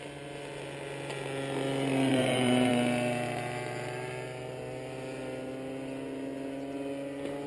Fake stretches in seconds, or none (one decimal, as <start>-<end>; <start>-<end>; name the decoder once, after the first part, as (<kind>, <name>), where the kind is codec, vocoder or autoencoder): 2.1-2.7 (vocoder, BigVGAN v2)